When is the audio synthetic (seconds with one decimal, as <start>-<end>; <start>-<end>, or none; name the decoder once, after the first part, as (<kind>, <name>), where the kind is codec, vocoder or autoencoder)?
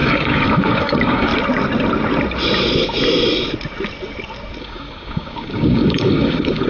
0.0-1.3 (codec, DAC); 4.6-6.7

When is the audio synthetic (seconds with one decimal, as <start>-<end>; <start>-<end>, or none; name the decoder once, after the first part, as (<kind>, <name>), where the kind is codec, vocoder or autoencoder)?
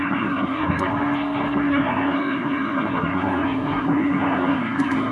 0.0-0.9 (codec, SNAC); 1.7-5.1